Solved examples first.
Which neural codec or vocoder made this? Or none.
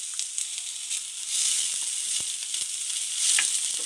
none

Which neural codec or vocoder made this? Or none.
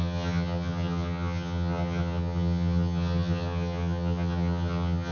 vocoder, HiFi-GAN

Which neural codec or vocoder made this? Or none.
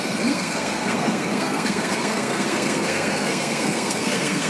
codec, SNAC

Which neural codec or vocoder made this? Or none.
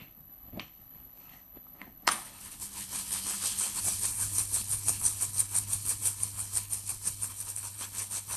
codec, HILCodec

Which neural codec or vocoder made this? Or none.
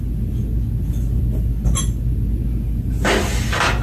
none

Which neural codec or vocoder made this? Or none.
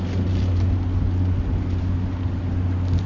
none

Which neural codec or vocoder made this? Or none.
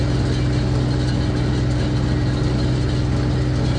none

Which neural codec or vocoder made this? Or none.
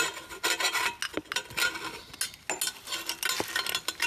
none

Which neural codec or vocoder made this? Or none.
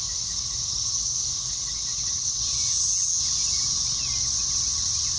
none